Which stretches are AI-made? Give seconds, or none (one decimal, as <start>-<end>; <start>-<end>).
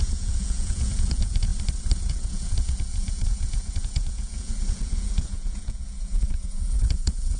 0.0-1.5; 2.1-7.4